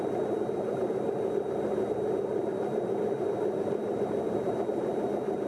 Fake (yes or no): yes